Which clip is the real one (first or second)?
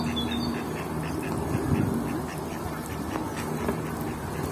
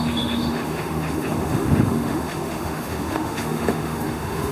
first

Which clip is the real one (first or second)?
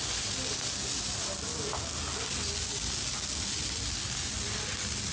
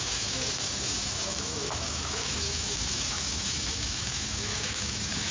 first